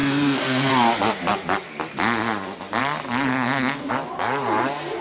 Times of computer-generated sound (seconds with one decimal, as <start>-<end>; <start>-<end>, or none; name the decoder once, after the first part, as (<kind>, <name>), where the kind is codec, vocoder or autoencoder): 0.0-0.7 (codec, SNAC); 3.3-3.9